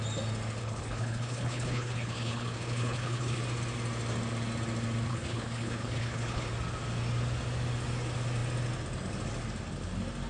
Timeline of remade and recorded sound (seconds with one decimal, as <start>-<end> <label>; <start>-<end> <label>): 0.0-0.6 recorded; 0.6-3.4 remade; 3.4-5.1 recorded; 5.1-6.5 remade; 6.5-10.3 recorded